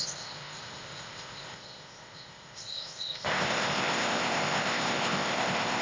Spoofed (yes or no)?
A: yes